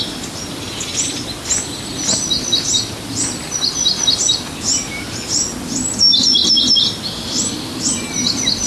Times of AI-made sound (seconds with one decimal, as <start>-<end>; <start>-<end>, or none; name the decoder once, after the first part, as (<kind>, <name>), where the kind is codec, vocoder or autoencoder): none